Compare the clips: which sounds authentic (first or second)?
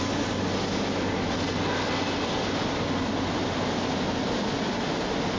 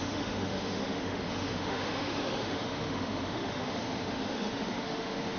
first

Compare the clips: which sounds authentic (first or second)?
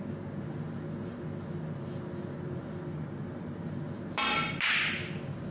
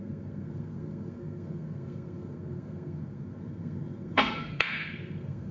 first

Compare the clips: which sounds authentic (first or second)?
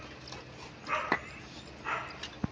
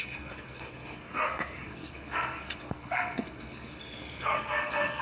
first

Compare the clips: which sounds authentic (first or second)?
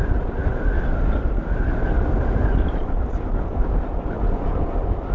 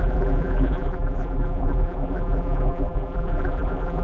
first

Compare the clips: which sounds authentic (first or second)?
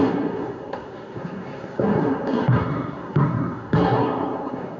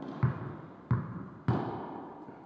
second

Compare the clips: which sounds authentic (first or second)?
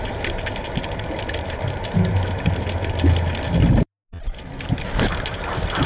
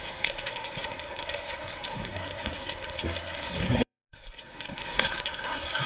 first